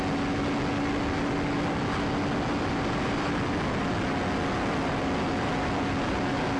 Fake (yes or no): no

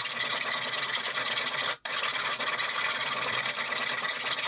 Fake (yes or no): yes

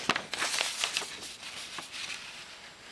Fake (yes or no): no